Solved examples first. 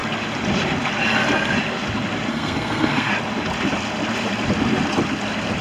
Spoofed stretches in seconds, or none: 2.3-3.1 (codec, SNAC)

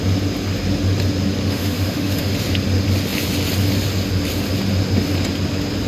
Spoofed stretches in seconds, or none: 1.4-2.4 (autoencoder, DAC-VAE)

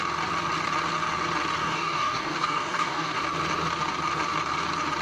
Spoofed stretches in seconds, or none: 1.6-3.2 (codec, DAC)

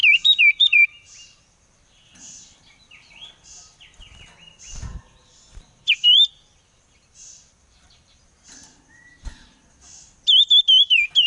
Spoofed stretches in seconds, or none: 0.0-3.6 (vocoder, BigVGAN v2); 4.9-8.2

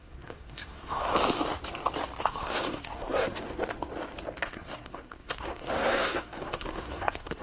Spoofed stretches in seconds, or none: 0.0-1.1 (codec, SNAC); 2.2-3.6; 4.4-7.4

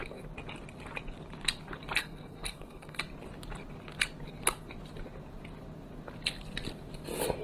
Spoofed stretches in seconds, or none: 2.0-3.0 (codec, SNAC)

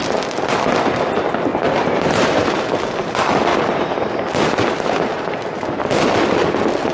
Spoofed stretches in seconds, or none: 1.5-2.6 (vocoder, BigVGAN v2); 3.5-4.1

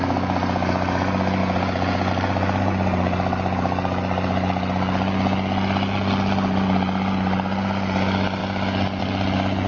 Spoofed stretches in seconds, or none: 1.4-2.1 (vocoder, Vocos)